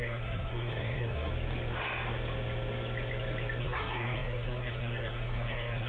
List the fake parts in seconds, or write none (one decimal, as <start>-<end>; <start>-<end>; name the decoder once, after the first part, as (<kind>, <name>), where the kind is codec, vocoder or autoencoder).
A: 0.0-1.3 (codec, SNAC); 3.6-5.9